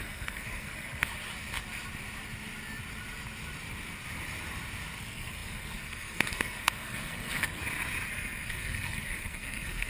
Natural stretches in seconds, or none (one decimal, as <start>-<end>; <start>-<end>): 1.1-5.0; 7.6-8.1